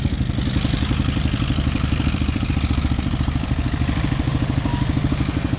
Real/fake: real